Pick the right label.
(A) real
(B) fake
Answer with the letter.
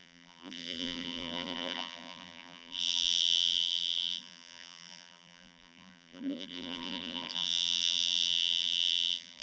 B